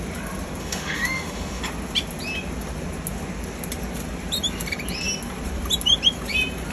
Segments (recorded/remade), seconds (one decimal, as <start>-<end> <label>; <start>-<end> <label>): 0.0-0.6 recorded; 0.6-1.6 remade; 1.6-6.7 recorded